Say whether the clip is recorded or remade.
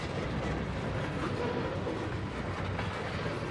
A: recorded